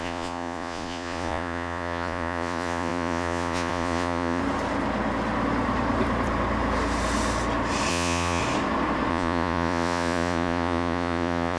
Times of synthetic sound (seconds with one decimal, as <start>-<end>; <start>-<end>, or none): 0.0-4.4; 7.9-8.4; 9.1-11.6